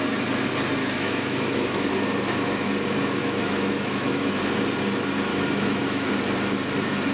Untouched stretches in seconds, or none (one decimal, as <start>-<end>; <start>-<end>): 0.0-0.8; 1.9-3.2; 4.3-5.3; 6.1-7.1